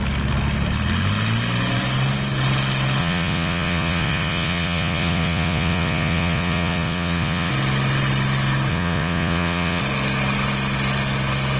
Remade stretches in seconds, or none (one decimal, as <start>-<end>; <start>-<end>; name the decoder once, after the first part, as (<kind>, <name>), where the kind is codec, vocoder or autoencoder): 3.0-7.5 (vocoder, Vocos); 8.7-9.8